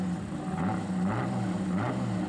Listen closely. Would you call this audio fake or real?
real